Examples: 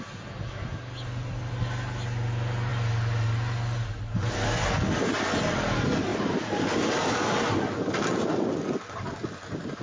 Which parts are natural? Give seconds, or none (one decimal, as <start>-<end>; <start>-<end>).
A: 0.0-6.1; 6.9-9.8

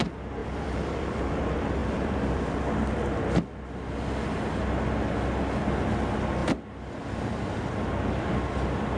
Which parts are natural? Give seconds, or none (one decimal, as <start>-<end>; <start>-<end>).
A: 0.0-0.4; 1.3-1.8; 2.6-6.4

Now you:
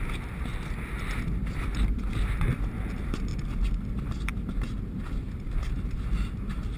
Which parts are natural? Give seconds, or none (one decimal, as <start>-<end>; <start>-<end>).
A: 0.5-1.3; 3.3-3.9

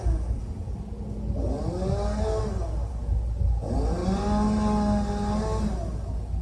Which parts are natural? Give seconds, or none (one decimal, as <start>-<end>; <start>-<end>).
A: 0.0-6.4

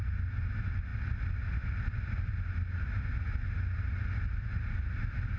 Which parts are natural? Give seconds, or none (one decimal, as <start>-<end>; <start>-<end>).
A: 0.0-5.4